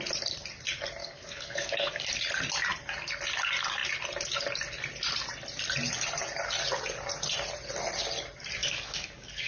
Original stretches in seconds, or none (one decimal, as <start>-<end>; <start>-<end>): 0.0-1.0; 2.1-8.6